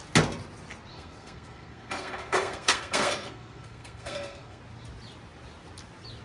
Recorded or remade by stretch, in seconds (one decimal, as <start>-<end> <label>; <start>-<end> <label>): 0.0-0.9 recorded; 0.9-4.6 remade; 4.6-6.2 recorded